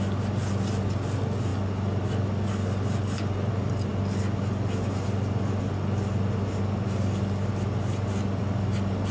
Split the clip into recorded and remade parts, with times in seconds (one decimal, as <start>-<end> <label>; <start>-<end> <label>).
0.0-9.1 recorded